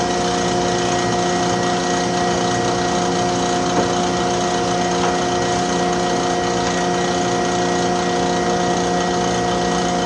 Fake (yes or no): no